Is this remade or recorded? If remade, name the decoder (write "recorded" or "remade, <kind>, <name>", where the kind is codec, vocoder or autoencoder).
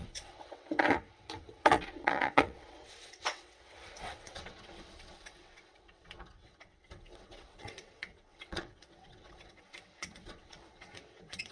remade, vocoder, WaveNeXt